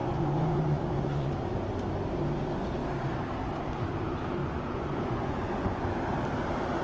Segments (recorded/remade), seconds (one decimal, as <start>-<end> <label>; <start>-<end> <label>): 0.0-1.3 remade; 1.3-4.4 recorded; 4.4-5.8 remade; 5.8-6.8 recorded